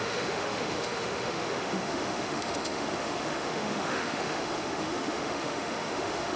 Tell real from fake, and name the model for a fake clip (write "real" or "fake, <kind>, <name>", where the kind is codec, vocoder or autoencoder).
fake, autoencoder, DAC-VAE